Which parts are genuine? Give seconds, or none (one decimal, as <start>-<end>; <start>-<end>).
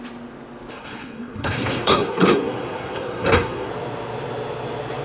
0.0-0.7; 3.7-5.0